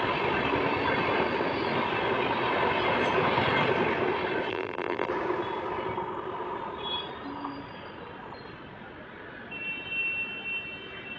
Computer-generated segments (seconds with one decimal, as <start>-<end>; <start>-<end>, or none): 4.5-5.1